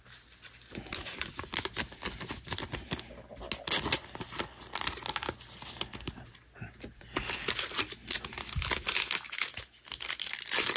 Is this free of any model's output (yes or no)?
yes